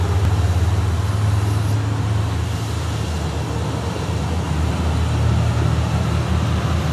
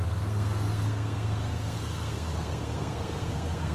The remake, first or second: second